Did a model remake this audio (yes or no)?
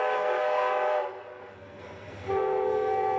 yes